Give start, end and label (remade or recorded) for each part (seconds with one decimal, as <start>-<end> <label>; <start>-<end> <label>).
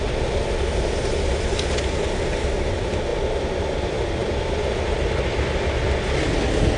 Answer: 0.0-6.8 recorded